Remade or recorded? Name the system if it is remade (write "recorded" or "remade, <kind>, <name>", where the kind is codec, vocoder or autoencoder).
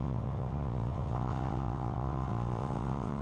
remade, vocoder, WaveNeXt